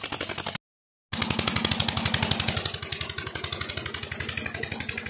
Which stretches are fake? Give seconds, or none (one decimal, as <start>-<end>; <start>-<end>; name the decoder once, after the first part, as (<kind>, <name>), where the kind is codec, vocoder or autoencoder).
none